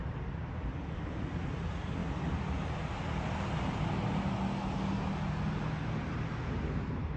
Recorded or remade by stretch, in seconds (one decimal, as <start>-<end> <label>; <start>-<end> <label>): 0.0-1.0 remade; 1.0-2.0 recorded; 2.0-3.5 remade; 3.5-7.2 recorded